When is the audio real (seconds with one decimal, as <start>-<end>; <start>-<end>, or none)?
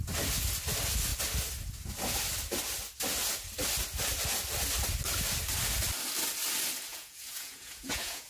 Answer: 0.0-6.9